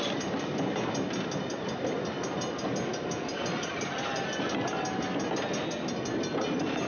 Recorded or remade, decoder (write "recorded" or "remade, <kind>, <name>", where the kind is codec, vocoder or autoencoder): recorded